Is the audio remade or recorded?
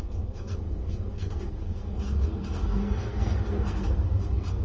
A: remade